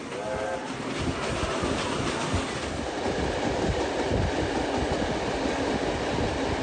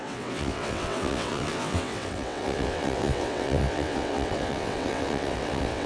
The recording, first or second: first